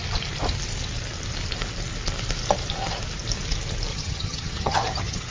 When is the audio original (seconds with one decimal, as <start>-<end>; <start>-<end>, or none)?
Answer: 0.0-3.9

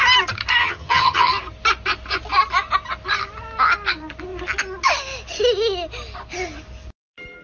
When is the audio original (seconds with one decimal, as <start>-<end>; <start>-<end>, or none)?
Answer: 0.0-0.6; 1.3-7.4

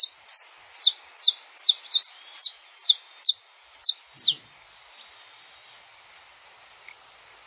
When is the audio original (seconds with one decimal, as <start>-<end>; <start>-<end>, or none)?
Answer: 0.0-7.5

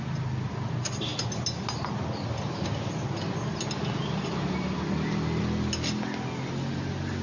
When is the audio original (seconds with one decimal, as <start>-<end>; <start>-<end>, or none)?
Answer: 0.0-7.2

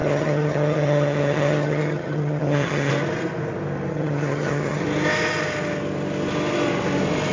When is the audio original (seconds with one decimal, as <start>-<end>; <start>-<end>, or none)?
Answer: 2.9-3.9; 4.8-7.3

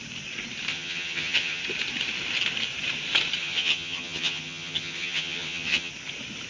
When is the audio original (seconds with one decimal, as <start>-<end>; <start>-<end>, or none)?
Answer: 0.0-0.7; 1.6-3.4; 5.9-6.5

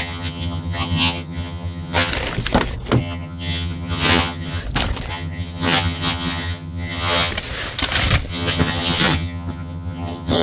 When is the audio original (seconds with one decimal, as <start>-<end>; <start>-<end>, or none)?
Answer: 2.1-3.0; 4.6-5.1; 7.3-8.3

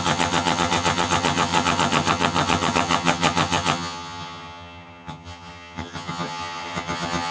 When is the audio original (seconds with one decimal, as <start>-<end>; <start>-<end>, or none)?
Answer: none